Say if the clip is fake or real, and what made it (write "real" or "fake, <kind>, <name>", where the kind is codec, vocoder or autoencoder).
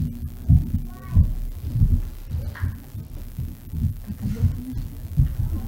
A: real